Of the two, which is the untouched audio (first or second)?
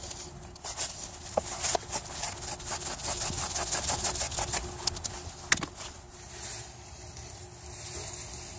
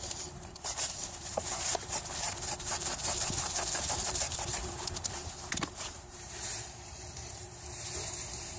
first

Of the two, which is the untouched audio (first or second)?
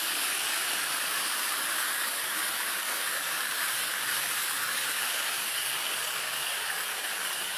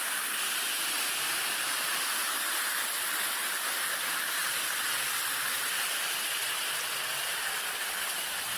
second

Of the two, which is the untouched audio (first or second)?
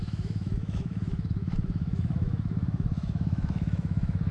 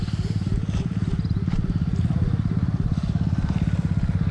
second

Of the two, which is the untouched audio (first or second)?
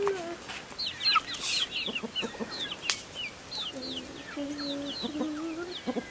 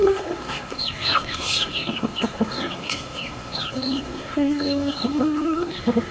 first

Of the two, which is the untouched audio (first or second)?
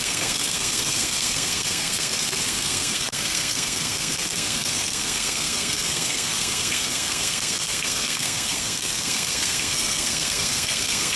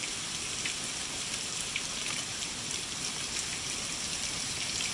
second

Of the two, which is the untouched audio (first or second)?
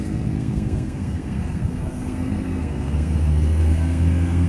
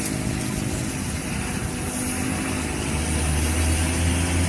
second